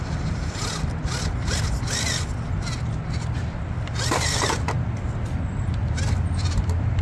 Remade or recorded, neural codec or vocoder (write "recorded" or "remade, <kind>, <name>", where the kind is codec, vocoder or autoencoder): recorded